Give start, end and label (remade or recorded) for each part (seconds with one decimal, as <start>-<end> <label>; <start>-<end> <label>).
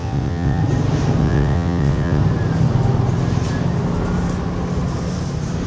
0.0-0.6 remade; 0.6-1.2 recorded; 1.2-2.2 remade; 2.2-5.7 recorded